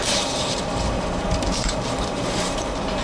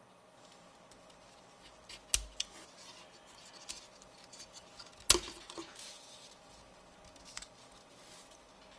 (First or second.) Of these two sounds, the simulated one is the first